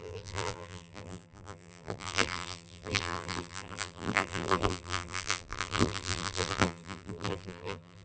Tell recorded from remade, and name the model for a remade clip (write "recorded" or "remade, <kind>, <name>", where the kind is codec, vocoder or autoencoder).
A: remade, vocoder, BigVGAN v2